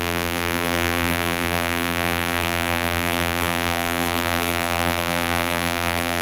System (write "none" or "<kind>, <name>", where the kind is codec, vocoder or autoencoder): vocoder, BigVGAN v2